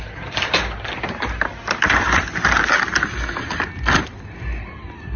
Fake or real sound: real